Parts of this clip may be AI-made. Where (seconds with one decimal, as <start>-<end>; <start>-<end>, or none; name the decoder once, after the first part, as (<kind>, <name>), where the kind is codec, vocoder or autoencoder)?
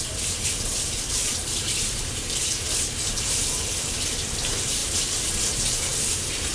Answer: 0.0-4.8 (vocoder, BigVGAN v2); 5.4-6.5